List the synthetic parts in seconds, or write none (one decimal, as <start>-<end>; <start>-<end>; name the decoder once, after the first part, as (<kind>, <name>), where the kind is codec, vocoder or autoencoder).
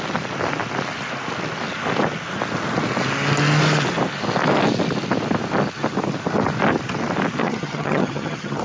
7.4-8.6 (vocoder, HiFi-GAN)